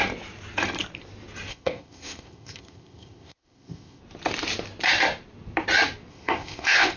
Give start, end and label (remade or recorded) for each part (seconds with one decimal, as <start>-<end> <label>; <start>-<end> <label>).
0.0-1.5 recorded; 1.5-4.0 remade; 4.0-6.1 recorded; 6.1-7.0 remade